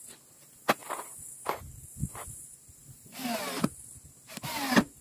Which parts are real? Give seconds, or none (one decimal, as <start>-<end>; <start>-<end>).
0.0-5.0